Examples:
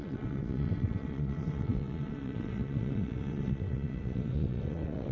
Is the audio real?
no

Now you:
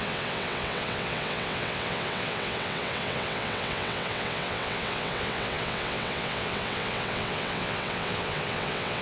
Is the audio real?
no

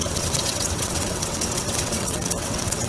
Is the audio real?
no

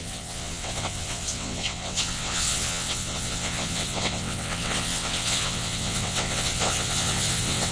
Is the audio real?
no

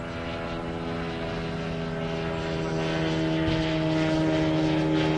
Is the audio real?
yes